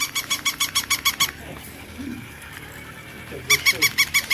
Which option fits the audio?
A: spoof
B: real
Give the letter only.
B